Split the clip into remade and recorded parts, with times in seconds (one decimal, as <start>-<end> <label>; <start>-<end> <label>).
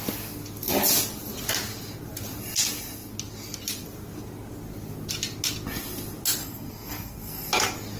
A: 0.0-6.4 recorded; 6.4-7.5 remade; 7.5-8.0 recorded